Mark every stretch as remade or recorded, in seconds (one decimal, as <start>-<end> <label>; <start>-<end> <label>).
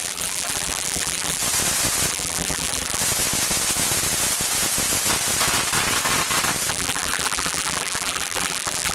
0.0-1.4 remade; 1.4-2.1 recorded; 2.1-3.0 remade; 3.0-6.7 recorded; 6.7-8.9 remade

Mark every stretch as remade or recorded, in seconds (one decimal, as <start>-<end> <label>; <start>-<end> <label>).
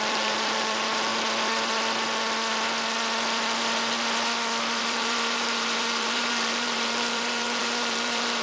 0.0-1.1 remade; 1.1-4.8 recorded; 4.8-8.4 remade